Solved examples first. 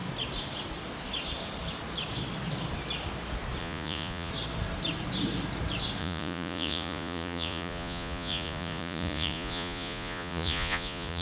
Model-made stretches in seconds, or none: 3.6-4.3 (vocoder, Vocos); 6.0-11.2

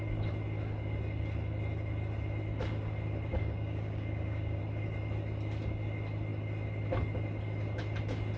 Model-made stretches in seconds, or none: 3.3-4.6 (codec, DAC)